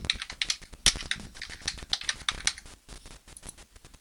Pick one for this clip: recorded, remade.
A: recorded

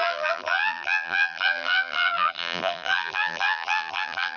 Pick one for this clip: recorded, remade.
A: remade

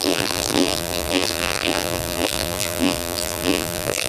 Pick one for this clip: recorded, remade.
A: remade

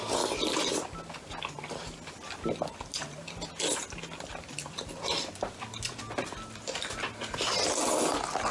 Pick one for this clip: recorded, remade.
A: recorded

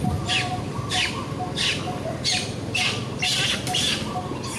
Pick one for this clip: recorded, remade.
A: recorded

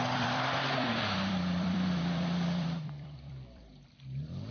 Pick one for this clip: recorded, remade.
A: remade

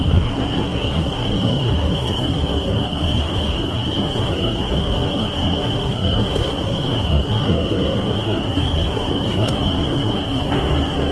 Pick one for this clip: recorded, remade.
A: remade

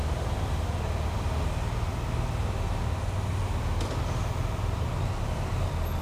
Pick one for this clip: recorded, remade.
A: recorded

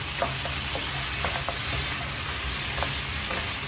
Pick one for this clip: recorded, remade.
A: recorded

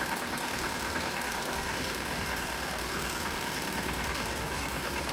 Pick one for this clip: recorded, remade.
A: remade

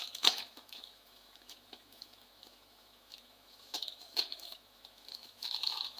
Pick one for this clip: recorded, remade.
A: remade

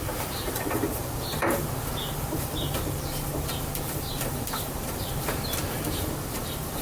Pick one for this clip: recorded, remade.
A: remade